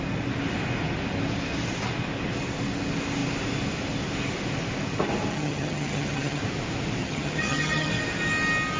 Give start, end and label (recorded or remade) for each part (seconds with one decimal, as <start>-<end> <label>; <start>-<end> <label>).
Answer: 0.0-5.3 recorded; 5.3-6.4 remade; 6.4-7.0 recorded; 7.0-7.9 remade; 7.9-8.8 recorded